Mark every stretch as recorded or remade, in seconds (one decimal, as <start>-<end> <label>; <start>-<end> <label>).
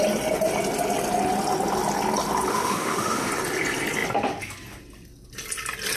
0.0-2.5 recorded; 2.5-3.3 remade; 3.3-6.0 recorded